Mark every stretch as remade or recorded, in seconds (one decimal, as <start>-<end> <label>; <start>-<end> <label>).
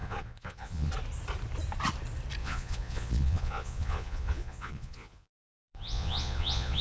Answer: 0.0-0.9 remade; 0.9-2.4 recorded; 2.4-6.8 remade